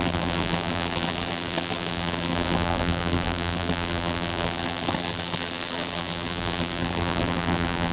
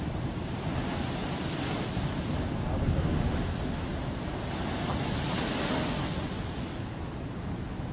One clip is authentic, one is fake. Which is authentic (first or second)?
second